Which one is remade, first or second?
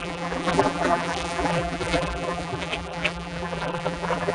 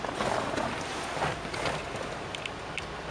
first